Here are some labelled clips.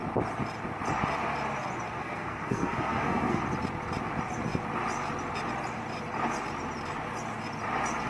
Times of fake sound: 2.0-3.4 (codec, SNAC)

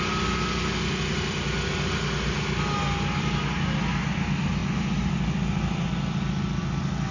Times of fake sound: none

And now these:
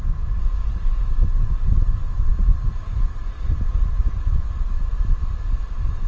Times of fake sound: none

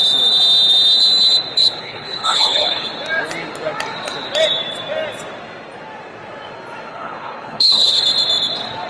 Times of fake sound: 1.6-2.9 (codec, HILCodec); 6.9-8.0

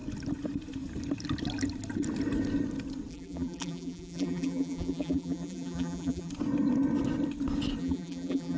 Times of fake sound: 3.1-6.3 (vocoder, BigVGAN v2); 7.8-8.6

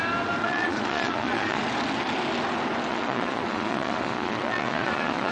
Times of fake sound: 0.4-1.6 (vocoder, Vocos); 2.9-5.3